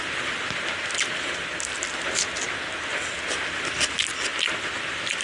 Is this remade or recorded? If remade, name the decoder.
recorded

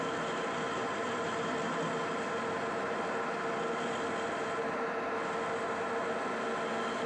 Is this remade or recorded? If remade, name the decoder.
recorded